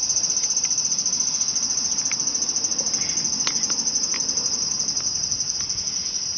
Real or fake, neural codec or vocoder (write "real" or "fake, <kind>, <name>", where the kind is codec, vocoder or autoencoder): real